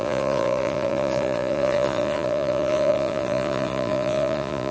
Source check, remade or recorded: remade